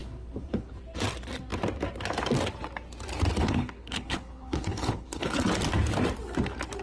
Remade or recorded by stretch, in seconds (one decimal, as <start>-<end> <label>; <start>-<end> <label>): 0.0-0.7 remade; 0.7-3.3 recorded; 3.3-5.5 remade; 5.5-6.8 recorded